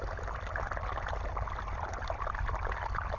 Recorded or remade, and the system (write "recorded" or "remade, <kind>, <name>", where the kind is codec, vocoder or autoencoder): recorded